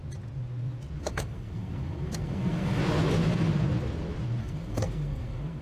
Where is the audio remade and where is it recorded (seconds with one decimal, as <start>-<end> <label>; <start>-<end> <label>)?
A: 0.0-1.0 recorded; 1.0-2.8 remade; 2.8-4.4 recorded; 4.4-5.6 remade